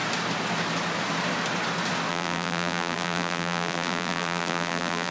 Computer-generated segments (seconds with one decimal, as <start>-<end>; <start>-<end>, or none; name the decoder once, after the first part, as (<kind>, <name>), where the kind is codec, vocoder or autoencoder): 2.1-5.1 (vocoder, BigVGAN v2)